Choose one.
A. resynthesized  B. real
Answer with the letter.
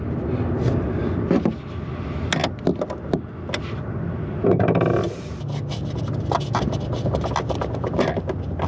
B